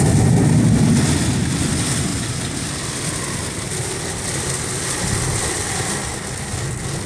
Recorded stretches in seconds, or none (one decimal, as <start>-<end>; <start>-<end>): 0.0-7.1

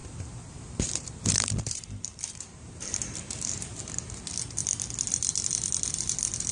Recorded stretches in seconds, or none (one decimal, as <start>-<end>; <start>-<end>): 3.8-6.5

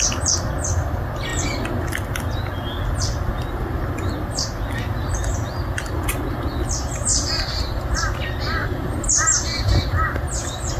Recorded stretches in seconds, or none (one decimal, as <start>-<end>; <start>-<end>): 0.0-7.1; 8.2-8.6

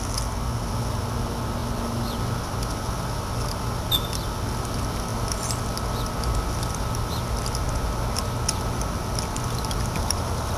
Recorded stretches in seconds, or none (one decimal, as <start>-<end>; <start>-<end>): 0.0-10.6